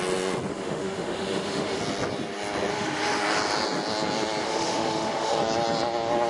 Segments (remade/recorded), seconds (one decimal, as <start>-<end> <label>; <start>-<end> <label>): 0.0-0.5 recorded; 0.5-1.8 remade; 1.8-2.7 recorded; 2.7-3.2 remade; 3.2-4.4 recorded; 4.4-5.4 remade; 5.4-6.3 recorded